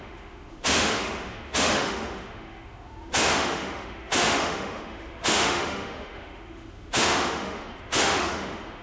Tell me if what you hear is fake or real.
fake